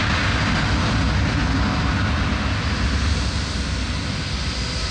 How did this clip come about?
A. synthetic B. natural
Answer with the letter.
B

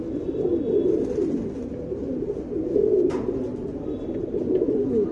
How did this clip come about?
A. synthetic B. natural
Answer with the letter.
B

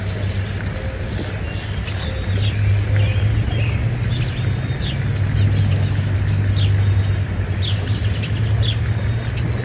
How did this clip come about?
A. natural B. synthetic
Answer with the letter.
A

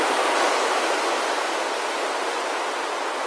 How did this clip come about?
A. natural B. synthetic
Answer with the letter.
A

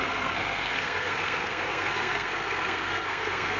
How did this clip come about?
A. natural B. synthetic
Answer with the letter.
B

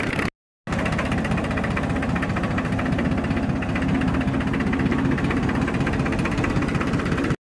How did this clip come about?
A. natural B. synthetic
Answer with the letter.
A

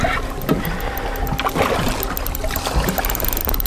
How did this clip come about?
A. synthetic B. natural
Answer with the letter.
B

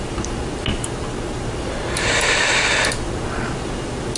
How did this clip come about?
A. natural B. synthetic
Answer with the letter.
A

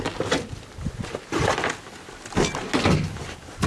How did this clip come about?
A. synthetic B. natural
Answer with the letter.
B